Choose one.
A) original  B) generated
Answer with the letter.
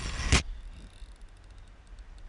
A